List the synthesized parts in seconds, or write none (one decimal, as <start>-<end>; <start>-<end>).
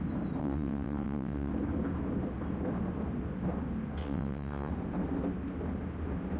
0.4-1.5; 4.0-4.7